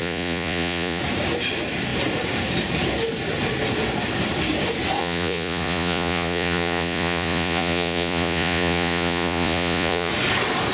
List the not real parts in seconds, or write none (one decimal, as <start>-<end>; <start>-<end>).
0.0-1.0; 5.0-10.1